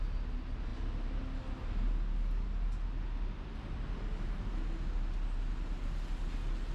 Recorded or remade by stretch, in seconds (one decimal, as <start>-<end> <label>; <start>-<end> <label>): 0.0-6.7 recorded

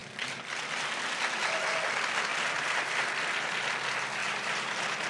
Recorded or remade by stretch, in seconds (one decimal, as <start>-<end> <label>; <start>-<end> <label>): 0.0-2.3 recorded; 2.3-3.1 remade; 3.1-4.2 recorded; 4.2-5.1 remade

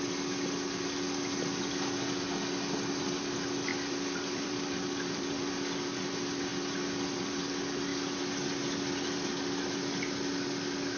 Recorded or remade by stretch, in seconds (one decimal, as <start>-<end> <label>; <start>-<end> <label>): 0.0-3.7 recorded; 3.7-6.0 remade; 6.0-11.0 recorded

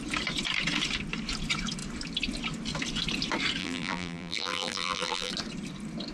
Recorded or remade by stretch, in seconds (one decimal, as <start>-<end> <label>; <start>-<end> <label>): 0.0-3.6 recorded; 3.6-5.3 remade; 5.3-6.1 recorded

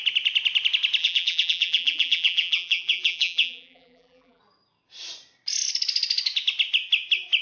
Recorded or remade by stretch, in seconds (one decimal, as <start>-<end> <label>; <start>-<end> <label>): 0.0-1.0 recorded; 1.0-4.4 remade; 4.4-7.4 recorded